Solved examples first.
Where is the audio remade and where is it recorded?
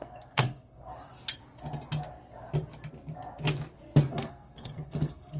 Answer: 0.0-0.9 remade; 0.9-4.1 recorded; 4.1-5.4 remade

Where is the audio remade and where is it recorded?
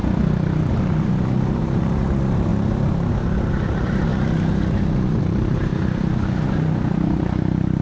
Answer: 0.0-0.7 recorded; 0.7-2.5 remade; 2.5-3.5 recorded; 3.5-4.1 remade; 4.1-5.2 recorded; 5.2-5.7 remade; 5.7-6.9 recorded; 6.9-7.8 remade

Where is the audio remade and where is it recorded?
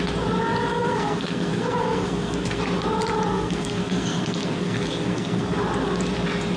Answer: 0.0-0.7 recorded; 0.7-2.6 remade; 2.6-3.3 recorded; 3.3-5.6 remade; 5.6-6.6 recorded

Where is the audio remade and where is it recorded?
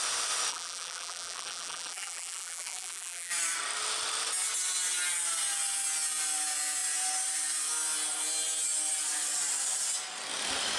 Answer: 0.0-0.5 recorded; 0.5-3.3 remade; 3.3-10.8 recorded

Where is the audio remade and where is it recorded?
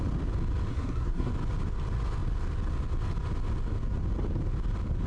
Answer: 0.0-0.7 recorded; 0.7-1.3 remade; 1.3-5.1 recorded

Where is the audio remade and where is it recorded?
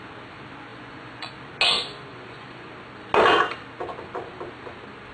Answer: 0.0-0.7 recorded; 0.7-1.3 remade; 1.3-2.1 recorded; 2.1-2.7 remade; 2.7-5.1 recorded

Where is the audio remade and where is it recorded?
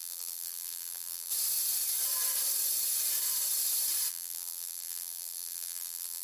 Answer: 0.0-1.3 remade; 1.3-4.1 recorded; 4.1-6.2 remade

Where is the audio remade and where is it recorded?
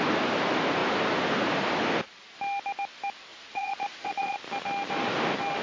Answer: 0.0-3.3 recorded; 3.3-4.5 remade; 4.5-5.6 recorded